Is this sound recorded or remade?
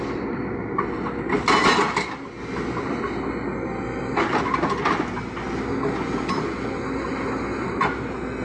recorded